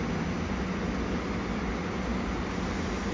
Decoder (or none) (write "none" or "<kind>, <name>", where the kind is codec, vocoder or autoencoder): none